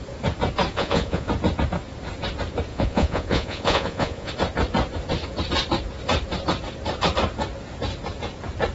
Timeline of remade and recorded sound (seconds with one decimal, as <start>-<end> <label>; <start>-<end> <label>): 0.0-0.7 recorded; 0.7-1.3 remade; 1.3-2.7 recorded; 2.7-4.3 remade; 4.3-8.7 recorded